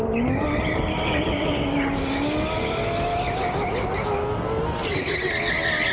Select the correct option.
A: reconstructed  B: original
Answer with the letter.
B